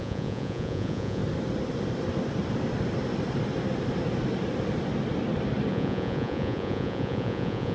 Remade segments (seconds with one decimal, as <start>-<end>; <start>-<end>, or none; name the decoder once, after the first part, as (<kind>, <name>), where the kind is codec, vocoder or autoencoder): 0.0-1.2 (vocoder, Vocos); 5.7-7.7